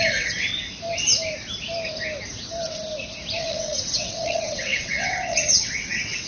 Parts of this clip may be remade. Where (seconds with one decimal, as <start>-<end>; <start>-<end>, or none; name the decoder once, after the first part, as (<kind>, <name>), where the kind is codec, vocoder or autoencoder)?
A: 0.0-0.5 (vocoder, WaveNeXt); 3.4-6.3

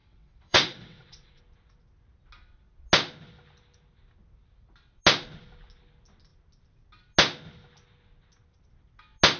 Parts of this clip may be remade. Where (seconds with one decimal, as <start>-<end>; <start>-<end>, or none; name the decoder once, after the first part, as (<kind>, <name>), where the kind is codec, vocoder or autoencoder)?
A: 0.0-1.4 (vocoder, WaveNeXt)

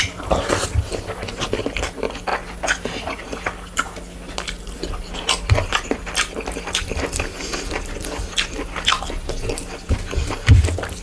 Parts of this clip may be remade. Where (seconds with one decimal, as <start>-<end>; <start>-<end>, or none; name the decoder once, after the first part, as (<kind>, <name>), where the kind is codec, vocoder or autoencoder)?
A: none